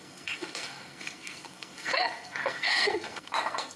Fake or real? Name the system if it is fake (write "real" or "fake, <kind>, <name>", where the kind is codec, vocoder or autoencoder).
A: fake, codec, SNAC